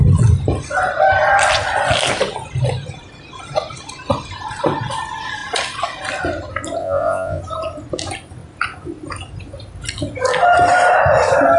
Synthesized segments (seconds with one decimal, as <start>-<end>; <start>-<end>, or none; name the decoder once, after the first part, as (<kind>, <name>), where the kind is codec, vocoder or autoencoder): 6.8-7.4 (vocoder, Vocos)